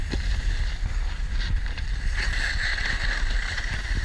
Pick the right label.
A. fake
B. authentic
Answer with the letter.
B